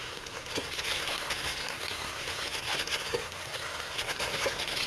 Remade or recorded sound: remade